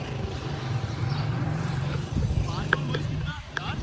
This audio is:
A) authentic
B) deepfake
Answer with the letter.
B